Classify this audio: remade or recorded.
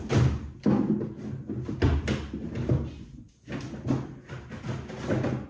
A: recorded